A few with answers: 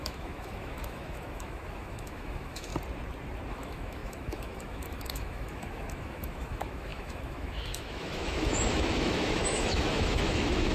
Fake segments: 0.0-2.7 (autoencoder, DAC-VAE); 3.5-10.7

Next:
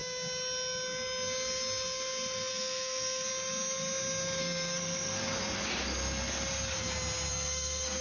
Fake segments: 2.5-3.3 (codec, SNAC); 4.4-5.2; 7.3-8.0

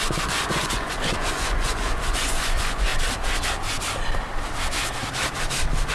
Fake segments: 0.0-2.9 (vocoder, Vocos)

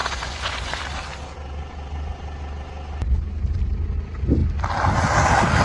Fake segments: 0.0-0.8 (vocoder, Vocos)